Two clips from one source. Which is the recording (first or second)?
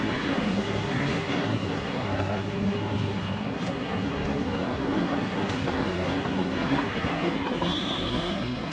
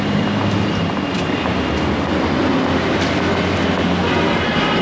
second